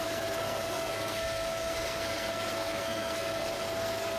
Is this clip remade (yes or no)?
yes